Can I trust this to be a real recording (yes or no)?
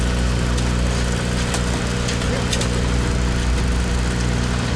yes